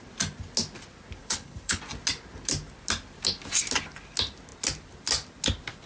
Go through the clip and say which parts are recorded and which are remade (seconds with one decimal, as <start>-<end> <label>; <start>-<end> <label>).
0.0-1.2 recorded; 1.2-1.8 remade; 1.8-5.9 recorded

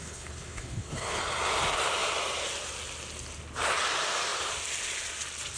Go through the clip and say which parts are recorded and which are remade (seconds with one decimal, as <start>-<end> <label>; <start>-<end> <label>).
0.0-1.2 remade; 1.2-5.6 recorded

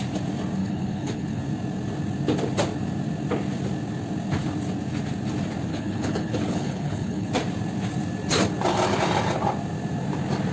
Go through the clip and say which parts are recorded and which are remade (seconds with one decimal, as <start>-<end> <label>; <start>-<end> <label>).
0.0-0.6 recorded; 0.6-1.4 remade; 1.4-5.7 recorded; 5.7-7.3 remade; 7.3-10.5 recorded

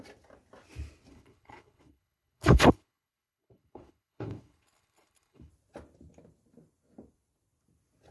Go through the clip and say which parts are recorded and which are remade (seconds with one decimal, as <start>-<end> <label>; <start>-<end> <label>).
0.0-1.1 recorded; 1.1-5.5 remade; 5.5-8.1 recorded

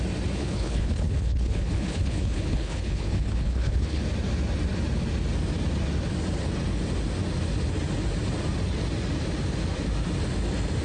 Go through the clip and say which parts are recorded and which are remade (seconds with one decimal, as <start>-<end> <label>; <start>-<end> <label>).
0.0-0.4 recorded; 0.4-4.0 remade; 4.0-10.8 recorded

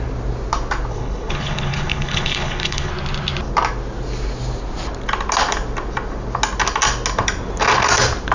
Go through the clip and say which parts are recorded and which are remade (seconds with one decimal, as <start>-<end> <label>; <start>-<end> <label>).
0.0-0.9 recorded; 0.9-2.9 remade; 2.9-8.3 recorded

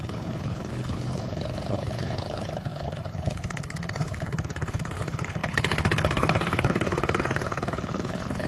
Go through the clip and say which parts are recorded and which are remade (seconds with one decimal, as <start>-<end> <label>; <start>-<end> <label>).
0.0-8.5 remade